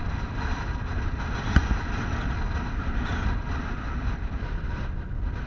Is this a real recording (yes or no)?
yes